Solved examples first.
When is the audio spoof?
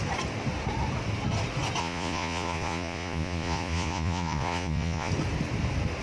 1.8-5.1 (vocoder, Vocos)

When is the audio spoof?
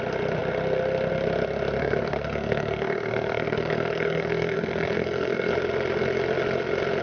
1.8-5.5 (codec, SNAC)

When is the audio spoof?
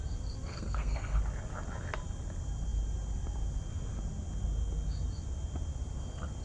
0.5-1.2 (codec, SNAC)